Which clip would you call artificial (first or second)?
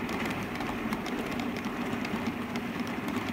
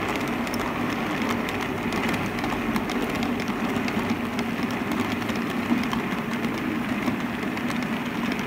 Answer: first